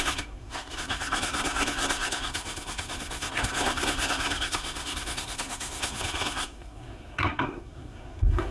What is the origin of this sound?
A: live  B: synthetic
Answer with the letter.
B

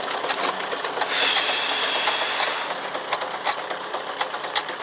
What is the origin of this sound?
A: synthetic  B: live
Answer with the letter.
B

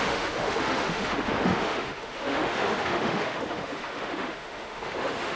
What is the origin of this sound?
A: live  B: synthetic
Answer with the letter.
B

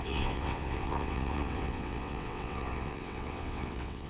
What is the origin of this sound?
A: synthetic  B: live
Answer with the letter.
A